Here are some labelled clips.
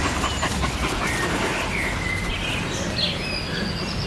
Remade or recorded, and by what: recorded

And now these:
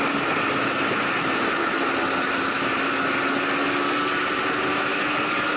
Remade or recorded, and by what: recorded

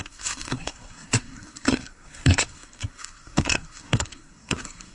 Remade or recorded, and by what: remade, codec, SNAC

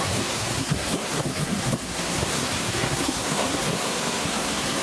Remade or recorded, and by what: remade, codec, SNAC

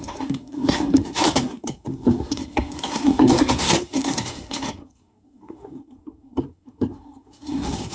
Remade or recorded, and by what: remade, codec, SNAC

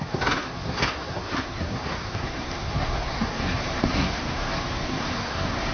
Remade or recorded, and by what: remade, codec, SNAC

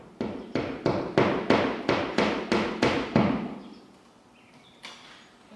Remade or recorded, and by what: recorded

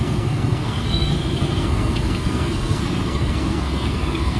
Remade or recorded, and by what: remade, codec, SNAC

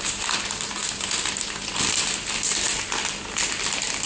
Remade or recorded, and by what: recorded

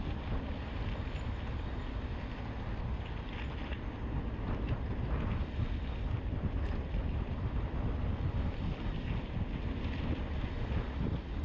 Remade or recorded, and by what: recorded